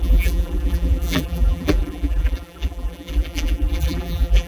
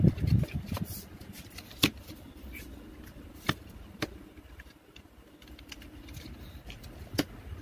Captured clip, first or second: second